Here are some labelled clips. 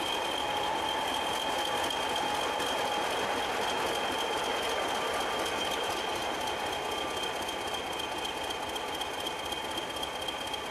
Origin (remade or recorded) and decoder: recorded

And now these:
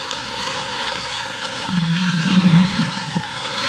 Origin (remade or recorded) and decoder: remade, codec, SNAC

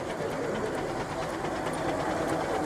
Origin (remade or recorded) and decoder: recorded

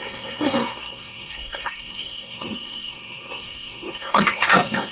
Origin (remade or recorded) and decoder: remade, codec, SNAC